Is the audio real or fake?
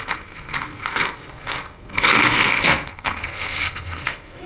fake